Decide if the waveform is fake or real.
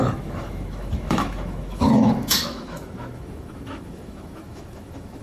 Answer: fake